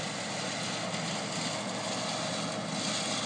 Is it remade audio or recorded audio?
recorded